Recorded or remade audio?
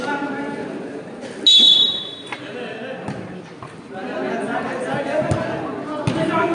recorded